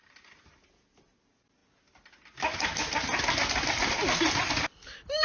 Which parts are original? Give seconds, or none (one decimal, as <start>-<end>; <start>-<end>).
0.0-5.2